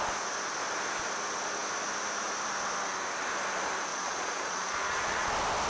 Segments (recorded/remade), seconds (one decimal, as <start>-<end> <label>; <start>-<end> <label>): 0.0-3.9 recorded; 3.9-5.3 remade; 5.3-5.7 recorded